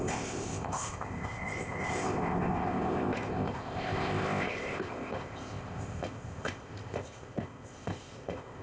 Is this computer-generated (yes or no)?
yes